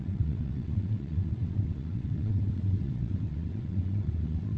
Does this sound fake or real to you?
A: fake